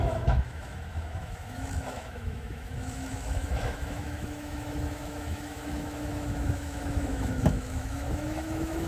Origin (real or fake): fake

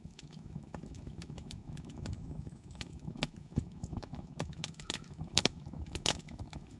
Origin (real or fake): fake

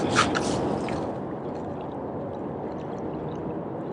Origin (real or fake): real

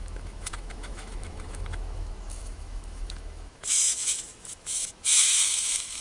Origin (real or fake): fake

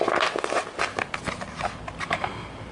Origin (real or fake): real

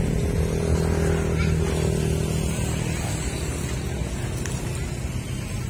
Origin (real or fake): real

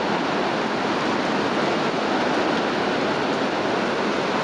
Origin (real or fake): real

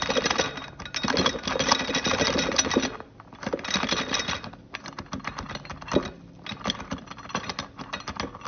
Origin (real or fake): real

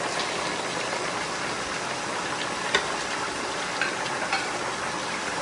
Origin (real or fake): real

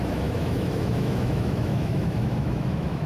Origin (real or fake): fake